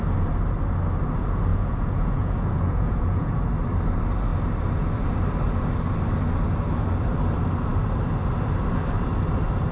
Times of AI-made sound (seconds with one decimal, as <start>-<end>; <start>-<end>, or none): 1.5-3.3